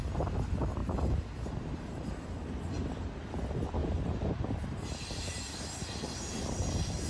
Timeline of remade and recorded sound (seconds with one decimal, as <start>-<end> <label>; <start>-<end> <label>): 0.0-0.8 recorded; 0.8-2.1 remade; 2.1-3.8 recorded; 3.8-4.3 remade; 4.3-7.1 recorded